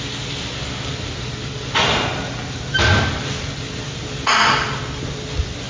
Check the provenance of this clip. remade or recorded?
recorded